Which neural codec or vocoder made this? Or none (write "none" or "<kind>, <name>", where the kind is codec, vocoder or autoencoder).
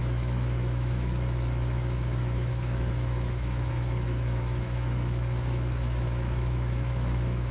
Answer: autoencoder, DAC-VAE